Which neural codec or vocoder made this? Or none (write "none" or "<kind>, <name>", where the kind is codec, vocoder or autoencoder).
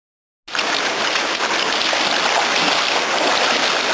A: none